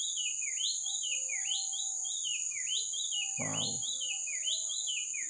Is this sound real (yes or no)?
yes